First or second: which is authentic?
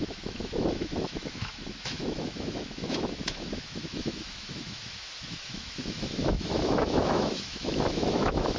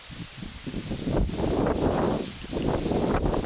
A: second